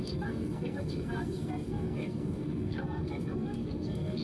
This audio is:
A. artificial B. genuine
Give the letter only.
A